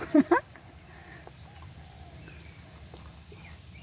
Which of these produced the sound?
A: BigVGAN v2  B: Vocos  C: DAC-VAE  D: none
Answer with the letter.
A